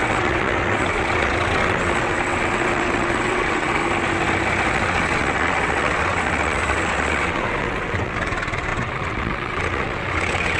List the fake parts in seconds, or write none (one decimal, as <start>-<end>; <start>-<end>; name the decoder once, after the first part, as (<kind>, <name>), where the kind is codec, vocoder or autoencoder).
0.0-3.8 (vocoder, WaveNeXt); 4.7-10.6